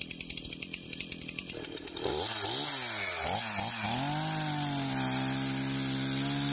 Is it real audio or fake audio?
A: real